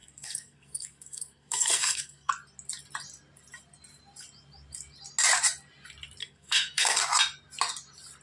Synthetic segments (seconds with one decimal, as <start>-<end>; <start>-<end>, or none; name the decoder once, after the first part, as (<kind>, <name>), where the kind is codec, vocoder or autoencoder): 0.0-2.3 (codec, SNAC); 6.2-7.0

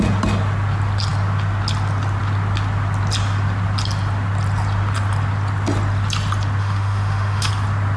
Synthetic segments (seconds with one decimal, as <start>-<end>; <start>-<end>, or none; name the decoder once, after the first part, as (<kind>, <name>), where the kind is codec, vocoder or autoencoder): 6.6-7.5 (autoencoder, DAC-VAE)

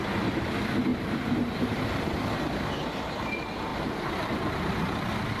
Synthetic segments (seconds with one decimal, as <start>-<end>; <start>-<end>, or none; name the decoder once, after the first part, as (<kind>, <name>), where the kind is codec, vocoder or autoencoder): 0.9-2.1 (vocoder, BigVGAN v2); 3.7-4.7

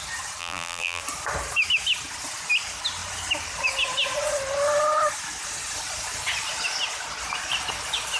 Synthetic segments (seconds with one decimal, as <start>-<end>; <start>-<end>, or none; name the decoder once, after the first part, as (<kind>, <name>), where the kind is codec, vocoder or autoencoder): 0.4-1.0 (vocoder, BigVGAN v2)